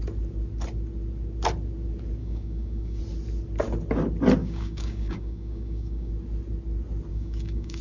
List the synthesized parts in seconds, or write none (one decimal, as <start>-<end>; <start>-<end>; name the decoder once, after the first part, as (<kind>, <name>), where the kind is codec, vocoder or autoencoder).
2.2-3.0 (codec, DAC); 4.4-6.1; 7.1-7.8

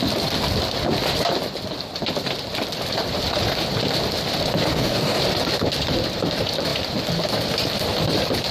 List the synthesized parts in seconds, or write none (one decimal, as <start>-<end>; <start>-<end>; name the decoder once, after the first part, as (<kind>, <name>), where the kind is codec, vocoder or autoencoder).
4.7-5.2 (codec, DAC)